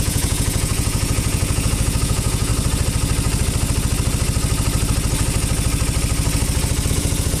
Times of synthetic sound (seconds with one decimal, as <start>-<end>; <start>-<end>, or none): 0.0-2.5; 6.9-7.4